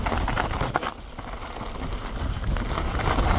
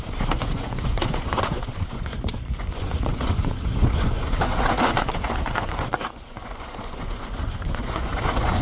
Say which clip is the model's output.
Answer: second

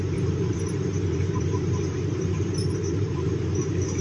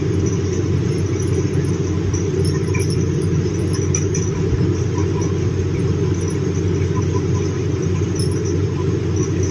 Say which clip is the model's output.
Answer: first